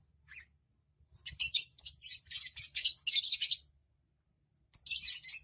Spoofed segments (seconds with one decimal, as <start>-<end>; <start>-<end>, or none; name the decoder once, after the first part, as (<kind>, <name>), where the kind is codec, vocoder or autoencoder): none